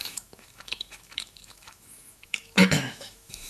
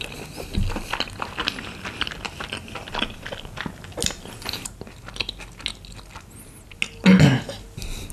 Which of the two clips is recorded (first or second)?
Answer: second